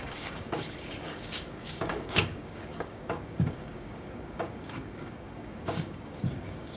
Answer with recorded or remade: remade